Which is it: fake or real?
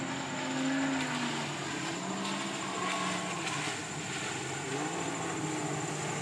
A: real